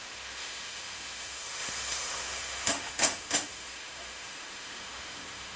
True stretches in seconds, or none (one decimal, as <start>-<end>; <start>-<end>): none